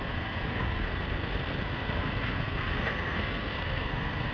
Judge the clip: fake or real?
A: fake